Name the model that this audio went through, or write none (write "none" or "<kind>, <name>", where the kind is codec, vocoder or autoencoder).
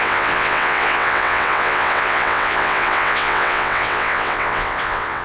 vocoder, WaveNeXt